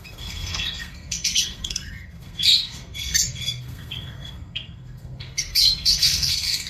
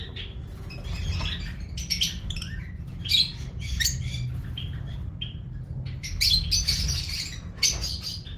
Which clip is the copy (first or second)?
first